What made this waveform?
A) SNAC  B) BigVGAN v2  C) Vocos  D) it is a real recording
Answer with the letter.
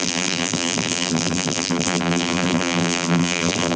B